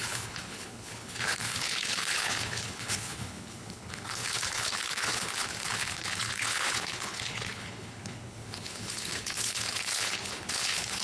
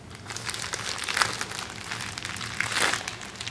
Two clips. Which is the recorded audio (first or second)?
second